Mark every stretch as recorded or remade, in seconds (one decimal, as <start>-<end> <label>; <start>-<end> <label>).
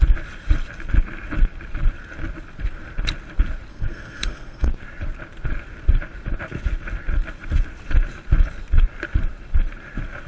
0.0-3.7 recorded; 3.7-4.7 remade; 4.7-10.3 recorded